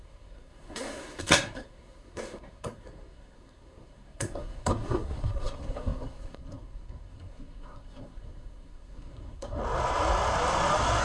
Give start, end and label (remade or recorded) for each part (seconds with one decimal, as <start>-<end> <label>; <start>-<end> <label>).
0.0-9.6 remade; 9.6-11.0 recorded